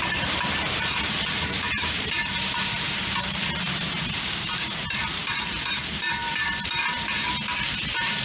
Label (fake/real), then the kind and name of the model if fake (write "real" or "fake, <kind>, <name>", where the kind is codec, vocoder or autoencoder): fake, vocoder, BigVGAN v2